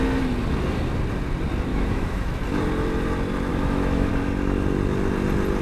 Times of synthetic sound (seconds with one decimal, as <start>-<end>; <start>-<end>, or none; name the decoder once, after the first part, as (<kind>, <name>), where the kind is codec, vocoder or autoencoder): 1.7-2.4 (autoencoder, DAC-VAE); 3.5-4.1